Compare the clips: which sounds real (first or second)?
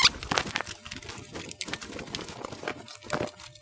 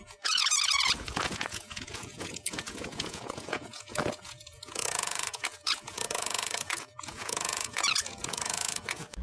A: first